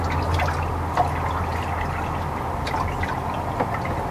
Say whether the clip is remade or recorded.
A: recorded